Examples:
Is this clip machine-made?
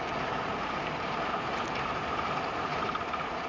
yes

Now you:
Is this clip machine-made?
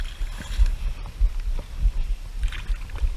no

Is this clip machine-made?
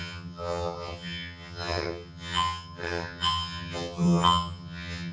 yes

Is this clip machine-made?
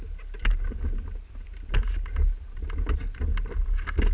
no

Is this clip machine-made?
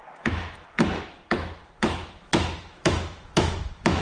yes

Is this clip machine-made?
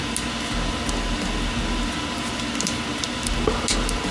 no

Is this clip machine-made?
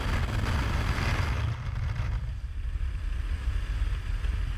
no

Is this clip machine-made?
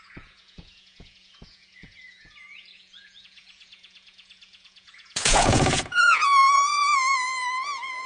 yes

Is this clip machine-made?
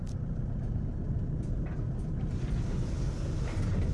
no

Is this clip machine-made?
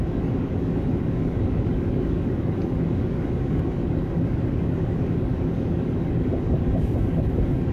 yes